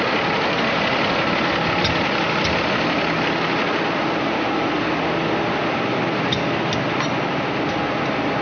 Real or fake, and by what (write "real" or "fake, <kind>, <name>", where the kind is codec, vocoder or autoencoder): real